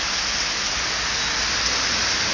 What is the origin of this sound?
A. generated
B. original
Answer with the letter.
B